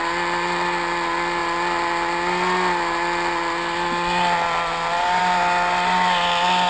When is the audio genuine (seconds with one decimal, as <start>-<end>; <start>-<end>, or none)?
0.0-6.7